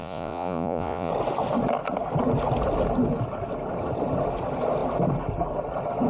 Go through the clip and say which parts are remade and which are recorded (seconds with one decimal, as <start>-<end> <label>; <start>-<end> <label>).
0.0-1.1 remade; 1.1-6.1 recorded